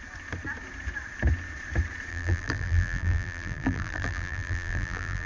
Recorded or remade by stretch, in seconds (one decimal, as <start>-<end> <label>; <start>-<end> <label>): 0.0-2.1 recorded; 2.1-5.3 remade